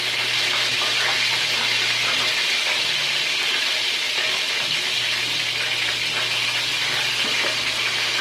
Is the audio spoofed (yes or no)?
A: no